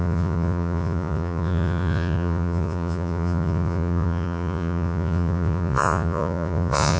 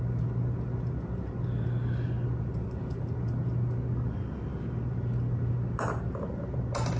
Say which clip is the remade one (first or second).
first